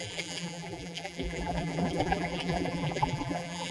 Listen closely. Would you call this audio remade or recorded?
remade